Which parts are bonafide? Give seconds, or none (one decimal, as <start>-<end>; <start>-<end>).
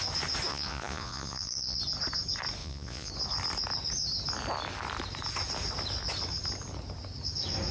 0.0-0.5; 1.8-2.6; 3.1-7.7